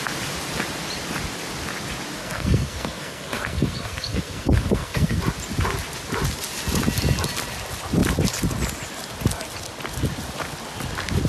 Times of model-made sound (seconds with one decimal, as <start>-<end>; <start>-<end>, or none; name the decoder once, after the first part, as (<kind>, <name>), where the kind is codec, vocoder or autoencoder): 2.2-5.2 (codec, SNAC)